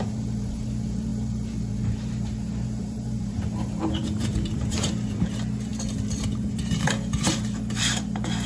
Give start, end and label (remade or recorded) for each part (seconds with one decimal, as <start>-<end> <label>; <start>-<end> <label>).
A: 0.0-8.5 remade